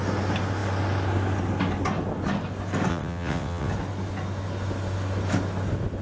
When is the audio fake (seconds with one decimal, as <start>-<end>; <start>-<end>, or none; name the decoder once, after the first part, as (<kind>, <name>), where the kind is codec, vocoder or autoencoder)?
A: 2.9-3.7 (vocoder, WaveNeXt)